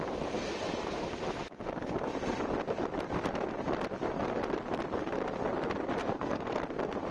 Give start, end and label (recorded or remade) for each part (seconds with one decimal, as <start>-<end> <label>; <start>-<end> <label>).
0.0-6.0 recorded; 6.0-6.5 remade; 6.5-7.1 recorded